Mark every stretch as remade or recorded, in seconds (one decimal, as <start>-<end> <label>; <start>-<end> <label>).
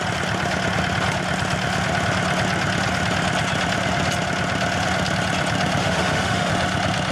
0.0-5.8 recorded; 5.8-6.5 remade; 6.5-7.1 recorded